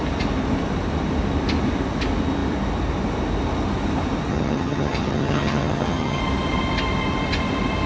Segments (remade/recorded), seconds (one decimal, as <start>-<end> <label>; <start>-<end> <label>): 0.0-4.3 recorded; 4.3-6.2 remade; 6.2-7.9 recorded